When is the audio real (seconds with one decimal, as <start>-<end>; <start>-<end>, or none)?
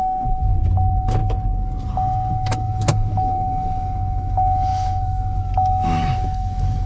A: 1.2-1.9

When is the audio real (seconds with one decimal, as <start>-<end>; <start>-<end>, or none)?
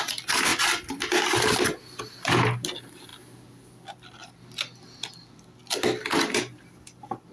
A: 0.0-3.1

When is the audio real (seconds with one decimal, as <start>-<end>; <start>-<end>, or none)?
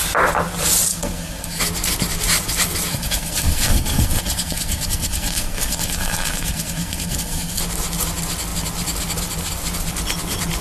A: 0.0-0.9; 1.6-2.9; 7.6-10.6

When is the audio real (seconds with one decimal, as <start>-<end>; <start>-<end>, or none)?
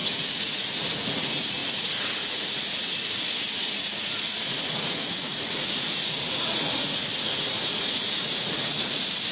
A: none